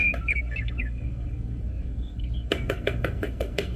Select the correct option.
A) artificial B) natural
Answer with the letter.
A